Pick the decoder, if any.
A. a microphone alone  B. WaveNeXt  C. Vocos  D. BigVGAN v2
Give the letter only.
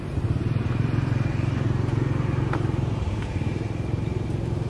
D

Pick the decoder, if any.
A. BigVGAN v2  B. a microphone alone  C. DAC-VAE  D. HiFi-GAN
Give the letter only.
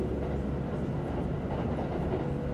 B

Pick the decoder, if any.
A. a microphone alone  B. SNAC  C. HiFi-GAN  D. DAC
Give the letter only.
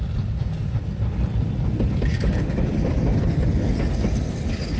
A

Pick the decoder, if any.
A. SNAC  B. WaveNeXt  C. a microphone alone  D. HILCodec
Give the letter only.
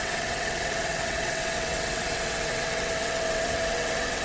B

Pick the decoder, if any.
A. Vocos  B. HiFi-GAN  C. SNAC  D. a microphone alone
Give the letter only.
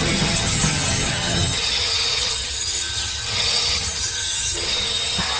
B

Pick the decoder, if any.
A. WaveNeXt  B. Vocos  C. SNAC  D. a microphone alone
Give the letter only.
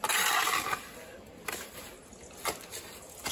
D